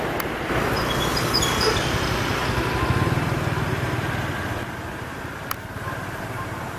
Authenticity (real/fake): fake